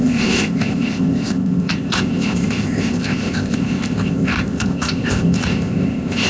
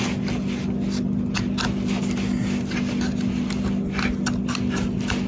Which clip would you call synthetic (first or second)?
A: first